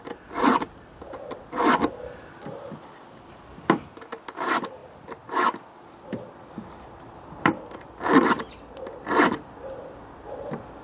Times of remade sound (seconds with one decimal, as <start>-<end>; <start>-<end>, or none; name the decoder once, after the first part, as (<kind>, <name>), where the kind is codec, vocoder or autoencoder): 4.8-6.1 (vocoder, BigVGAN v2)